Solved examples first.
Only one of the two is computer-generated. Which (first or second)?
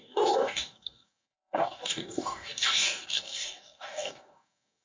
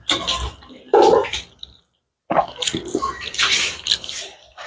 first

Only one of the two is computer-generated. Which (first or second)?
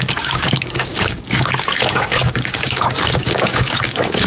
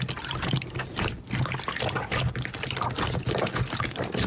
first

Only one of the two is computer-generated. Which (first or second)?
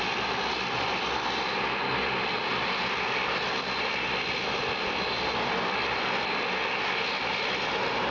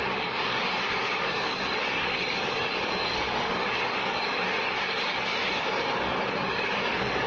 second